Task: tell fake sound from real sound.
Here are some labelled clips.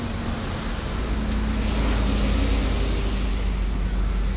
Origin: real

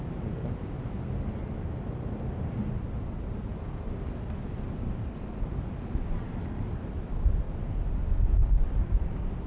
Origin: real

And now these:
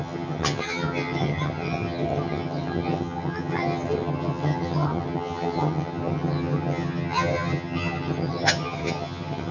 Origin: fake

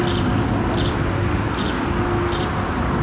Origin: real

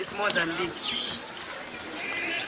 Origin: real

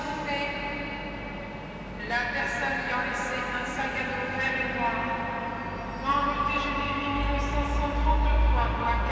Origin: real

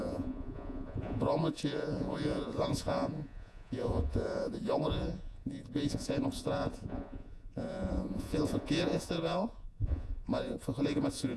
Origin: fake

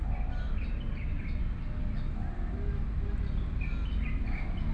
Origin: real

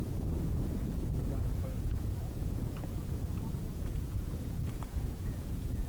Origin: fake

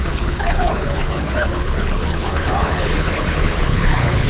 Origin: fake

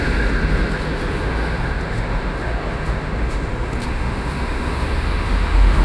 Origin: fake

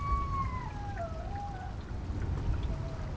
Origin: real